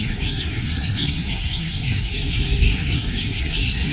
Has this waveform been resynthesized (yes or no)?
yes